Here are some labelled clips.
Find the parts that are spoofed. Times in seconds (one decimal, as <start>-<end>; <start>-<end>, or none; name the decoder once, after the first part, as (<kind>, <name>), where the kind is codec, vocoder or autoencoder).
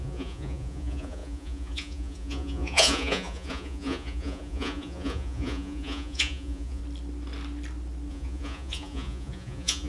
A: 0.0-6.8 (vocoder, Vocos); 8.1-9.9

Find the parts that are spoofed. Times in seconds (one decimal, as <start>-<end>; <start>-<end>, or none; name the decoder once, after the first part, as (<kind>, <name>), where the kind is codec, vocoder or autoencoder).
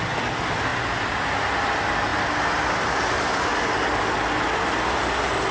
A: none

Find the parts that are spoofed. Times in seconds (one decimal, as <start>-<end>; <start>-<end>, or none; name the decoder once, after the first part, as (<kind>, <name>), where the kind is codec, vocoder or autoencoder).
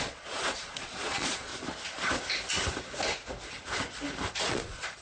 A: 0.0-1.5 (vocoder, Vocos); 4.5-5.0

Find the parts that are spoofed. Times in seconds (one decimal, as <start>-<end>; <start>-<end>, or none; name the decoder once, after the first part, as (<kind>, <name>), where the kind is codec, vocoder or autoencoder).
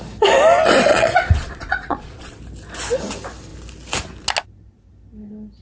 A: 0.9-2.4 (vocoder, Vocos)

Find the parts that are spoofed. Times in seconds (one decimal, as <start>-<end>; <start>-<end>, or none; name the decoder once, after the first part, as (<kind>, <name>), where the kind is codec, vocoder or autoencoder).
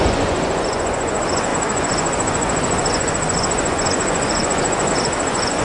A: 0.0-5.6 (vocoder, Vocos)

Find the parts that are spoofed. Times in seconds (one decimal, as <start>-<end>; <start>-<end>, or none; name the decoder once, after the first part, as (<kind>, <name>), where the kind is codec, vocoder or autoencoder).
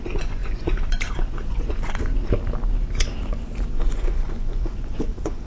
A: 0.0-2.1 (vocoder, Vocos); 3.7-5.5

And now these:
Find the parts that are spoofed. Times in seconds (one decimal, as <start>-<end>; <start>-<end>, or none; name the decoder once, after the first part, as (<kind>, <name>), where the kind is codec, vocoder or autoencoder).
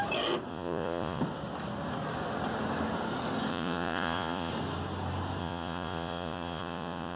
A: 0.5-1.2 (vocoder, Vocos); 3.5-4.5; 5.4-7.2